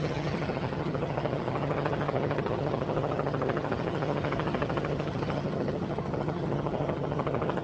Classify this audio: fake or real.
fake